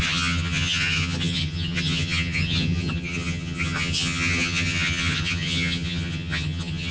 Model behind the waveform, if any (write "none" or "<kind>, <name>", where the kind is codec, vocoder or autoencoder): vocoder, HiFi-GAN